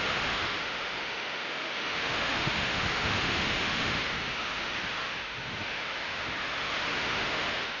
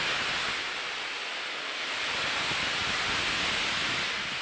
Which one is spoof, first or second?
first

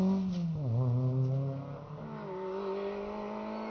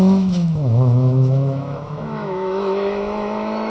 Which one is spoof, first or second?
second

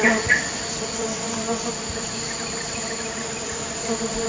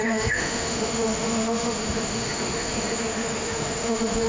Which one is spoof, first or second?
second